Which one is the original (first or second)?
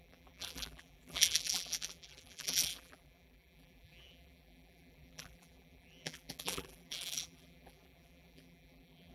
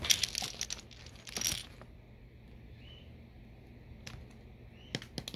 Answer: second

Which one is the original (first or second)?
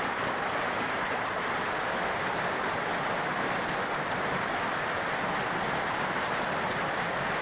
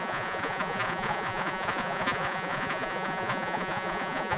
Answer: first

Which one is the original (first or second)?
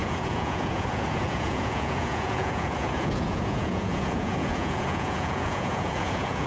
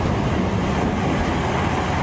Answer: second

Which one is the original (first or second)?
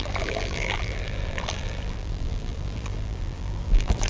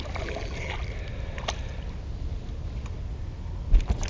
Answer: second